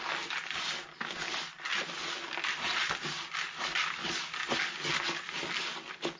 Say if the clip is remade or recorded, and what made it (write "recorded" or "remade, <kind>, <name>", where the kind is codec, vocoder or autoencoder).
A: recorded